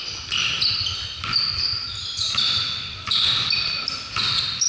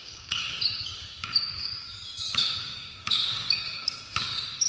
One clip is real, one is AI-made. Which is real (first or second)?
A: first